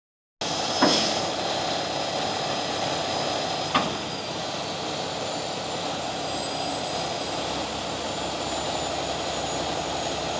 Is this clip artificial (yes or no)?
no